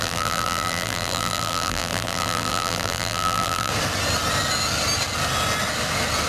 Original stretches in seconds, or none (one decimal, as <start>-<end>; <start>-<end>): 3.7-6.3